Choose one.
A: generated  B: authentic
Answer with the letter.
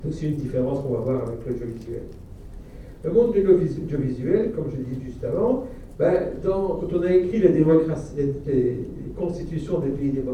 A